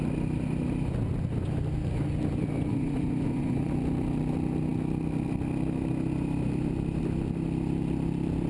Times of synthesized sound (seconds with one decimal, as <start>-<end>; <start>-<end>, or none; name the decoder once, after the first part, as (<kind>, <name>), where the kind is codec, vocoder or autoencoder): 2.7-3.7 (vocoder, Vocos)